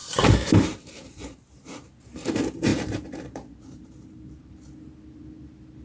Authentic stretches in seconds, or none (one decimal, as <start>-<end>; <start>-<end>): 1.4-2.7; 4.5-5.8